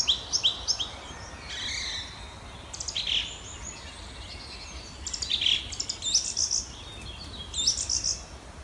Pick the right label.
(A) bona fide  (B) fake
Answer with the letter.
A